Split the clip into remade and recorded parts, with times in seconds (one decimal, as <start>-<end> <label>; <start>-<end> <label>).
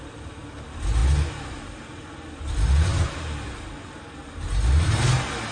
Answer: 0.0-5.5 recorded